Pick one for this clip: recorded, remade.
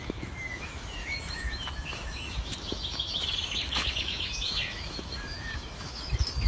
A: remade